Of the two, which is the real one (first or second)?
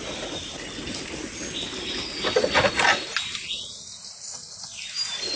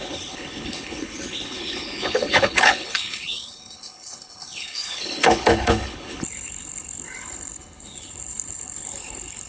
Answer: first